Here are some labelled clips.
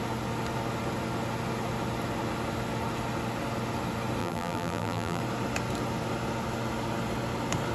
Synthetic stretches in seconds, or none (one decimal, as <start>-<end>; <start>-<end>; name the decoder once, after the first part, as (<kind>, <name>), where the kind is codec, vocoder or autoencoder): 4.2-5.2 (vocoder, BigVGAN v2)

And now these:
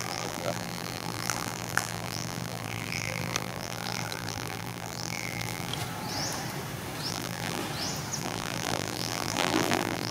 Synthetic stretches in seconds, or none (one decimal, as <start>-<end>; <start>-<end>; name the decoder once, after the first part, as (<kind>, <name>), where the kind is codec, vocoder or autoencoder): 0.0-5.7 (vocoder, BigVGAN v2); 7.1-7.6; 8.2-10.1

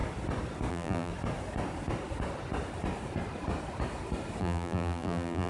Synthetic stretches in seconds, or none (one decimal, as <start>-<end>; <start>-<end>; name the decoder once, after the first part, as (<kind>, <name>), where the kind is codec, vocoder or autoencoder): 0.7-1.1 (vocoder, BigVGAN v2); 4.4-5.5

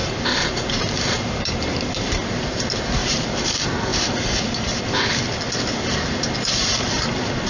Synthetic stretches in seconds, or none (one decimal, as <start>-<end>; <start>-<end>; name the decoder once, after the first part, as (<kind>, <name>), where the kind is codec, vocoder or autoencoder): 0.0-2.3 (vocoder, BigVGAN v2); 3.0-3.5; 3.9-4.8